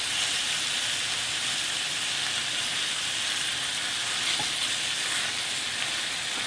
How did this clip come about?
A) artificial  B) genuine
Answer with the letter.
B